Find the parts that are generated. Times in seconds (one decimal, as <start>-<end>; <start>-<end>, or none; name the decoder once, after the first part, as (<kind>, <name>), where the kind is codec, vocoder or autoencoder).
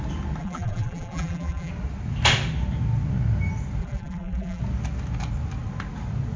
0.4-1.7 (vocoder, BigVGAN v2); 3.8-4.6